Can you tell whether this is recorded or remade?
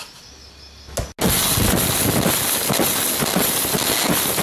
recorded